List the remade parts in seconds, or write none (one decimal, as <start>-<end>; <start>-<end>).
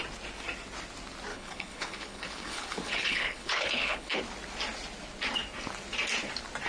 1.3-4.2